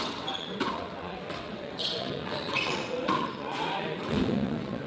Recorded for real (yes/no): no